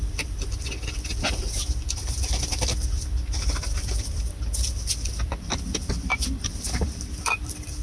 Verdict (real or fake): fake